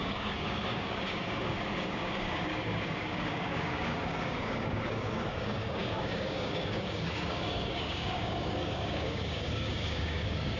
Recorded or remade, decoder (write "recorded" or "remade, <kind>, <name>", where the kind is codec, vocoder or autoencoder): remade, codec, DAC